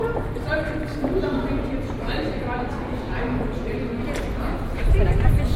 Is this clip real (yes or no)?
yes